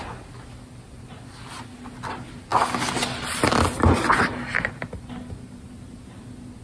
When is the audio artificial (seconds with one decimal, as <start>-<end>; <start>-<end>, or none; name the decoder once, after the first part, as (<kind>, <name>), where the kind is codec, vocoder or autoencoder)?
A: none